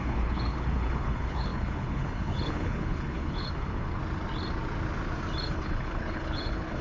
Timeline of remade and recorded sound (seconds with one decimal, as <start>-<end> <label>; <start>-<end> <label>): 0.0-4.0 remade; 4.0-5.4 recorded; 5.4-6.8 remade